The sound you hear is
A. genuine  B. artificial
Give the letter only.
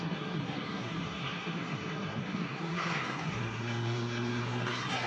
B